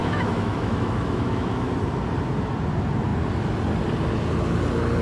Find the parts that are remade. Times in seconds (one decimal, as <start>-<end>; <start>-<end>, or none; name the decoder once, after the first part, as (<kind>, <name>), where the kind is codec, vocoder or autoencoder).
0.0-1.7 (autoencoder, DAC-VAE)

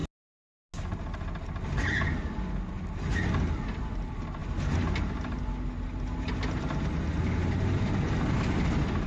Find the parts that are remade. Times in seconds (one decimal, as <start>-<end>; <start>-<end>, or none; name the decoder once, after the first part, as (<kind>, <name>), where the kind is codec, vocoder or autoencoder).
none

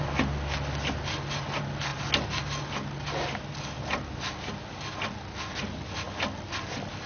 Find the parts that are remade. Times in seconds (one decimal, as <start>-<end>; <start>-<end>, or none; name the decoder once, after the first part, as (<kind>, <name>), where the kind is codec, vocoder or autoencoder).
none

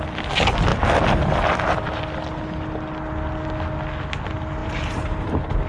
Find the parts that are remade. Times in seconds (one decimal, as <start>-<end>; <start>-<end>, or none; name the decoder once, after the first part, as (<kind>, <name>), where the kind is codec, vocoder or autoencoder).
4.6-5.3 (vocoder, BigVGAN v2)

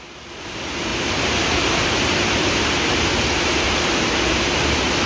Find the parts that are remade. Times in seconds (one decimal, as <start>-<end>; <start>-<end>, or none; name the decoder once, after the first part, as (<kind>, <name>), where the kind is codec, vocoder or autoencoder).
0.9-4.0 (vocoder, BigVGAN v2)